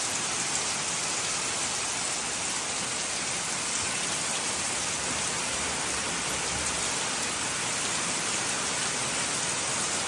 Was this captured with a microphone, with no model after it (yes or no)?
yes